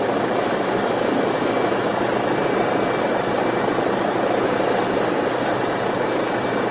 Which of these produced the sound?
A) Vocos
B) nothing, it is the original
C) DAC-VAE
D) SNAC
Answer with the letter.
B